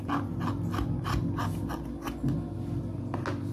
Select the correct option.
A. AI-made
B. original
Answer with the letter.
B